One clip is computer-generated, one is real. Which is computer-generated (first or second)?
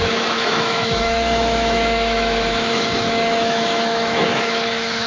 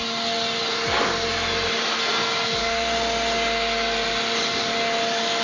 first